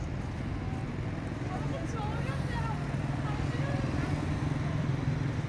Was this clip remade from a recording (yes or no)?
no